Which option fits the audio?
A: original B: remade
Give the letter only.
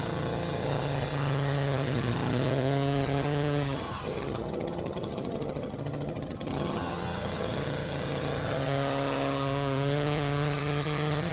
B